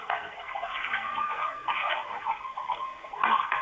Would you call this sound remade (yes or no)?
yes